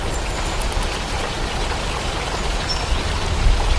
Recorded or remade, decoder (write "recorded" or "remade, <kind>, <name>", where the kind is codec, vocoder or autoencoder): recorded